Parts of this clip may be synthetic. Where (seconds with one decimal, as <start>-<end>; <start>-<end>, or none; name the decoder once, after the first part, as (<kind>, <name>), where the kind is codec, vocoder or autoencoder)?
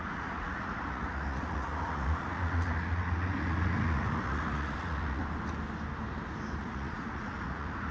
0.0-5.2 (vocoder, Vocos); 6.6-7.9